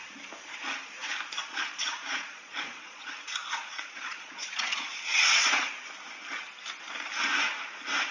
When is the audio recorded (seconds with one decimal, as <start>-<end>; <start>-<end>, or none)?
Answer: 0.0-1.4; 3.1-3.6; 5.8-8.1